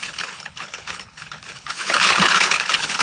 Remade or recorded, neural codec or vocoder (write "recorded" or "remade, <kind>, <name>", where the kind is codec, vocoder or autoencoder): remade, codec, HILCodec